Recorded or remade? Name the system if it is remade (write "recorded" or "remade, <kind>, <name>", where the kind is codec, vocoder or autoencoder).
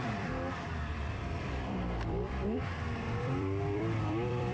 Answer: remade, vocoder, BigVGAN v2